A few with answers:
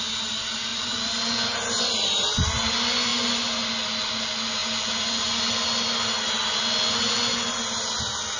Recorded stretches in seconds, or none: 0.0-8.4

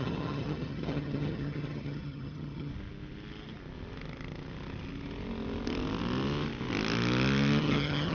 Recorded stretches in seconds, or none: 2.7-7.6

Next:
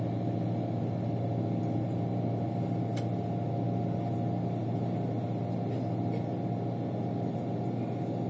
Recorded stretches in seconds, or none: 0.0-8.3